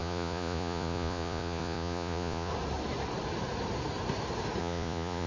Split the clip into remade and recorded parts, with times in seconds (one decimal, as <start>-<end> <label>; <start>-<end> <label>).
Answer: 0.0-2.5 remade; 2.5-4.6 recorded; 4.6-5.3 remade